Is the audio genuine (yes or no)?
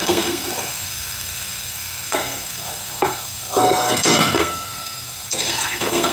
no